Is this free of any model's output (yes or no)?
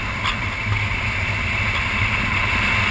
yes